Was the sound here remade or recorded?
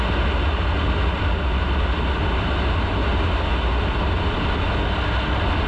recorded